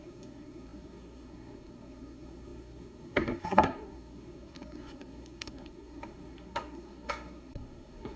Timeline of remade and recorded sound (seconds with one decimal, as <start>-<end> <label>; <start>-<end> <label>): 0.0-8.2 remade